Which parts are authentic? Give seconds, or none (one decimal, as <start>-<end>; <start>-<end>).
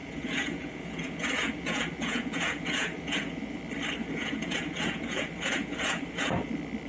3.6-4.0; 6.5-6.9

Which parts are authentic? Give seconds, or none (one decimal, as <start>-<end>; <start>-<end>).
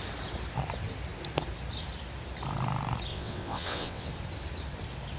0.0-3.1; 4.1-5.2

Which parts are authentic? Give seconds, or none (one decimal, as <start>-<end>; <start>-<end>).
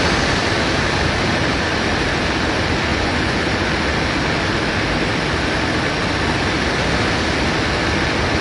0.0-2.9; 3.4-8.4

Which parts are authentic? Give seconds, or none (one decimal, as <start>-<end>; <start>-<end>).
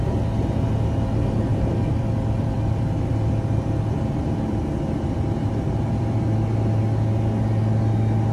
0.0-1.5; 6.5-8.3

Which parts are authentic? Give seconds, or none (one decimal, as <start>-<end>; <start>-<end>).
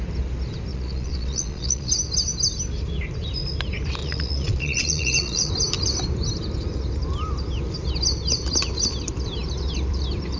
0.0-0.7; 1.9-4.0; 5.5-10.4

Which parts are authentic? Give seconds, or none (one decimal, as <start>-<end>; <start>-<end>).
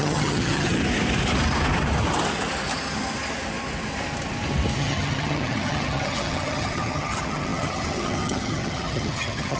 0.8-4.8